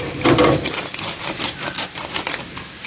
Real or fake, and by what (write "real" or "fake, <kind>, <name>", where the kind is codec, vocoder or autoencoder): real